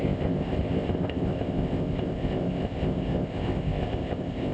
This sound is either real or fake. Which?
fake